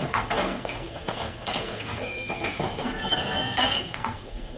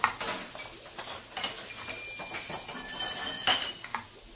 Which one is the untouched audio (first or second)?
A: second